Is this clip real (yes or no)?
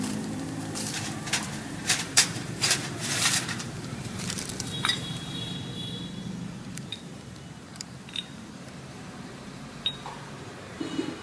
no